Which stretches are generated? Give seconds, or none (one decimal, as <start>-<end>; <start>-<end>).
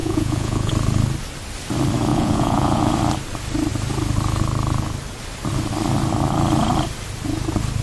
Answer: 0.0-0.7; 2.1-2.9